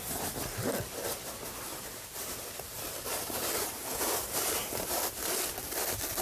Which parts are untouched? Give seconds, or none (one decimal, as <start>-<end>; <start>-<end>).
0.0-1.7; 3.1-3.9; 5.7-6.2